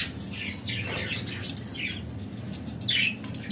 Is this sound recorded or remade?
recorded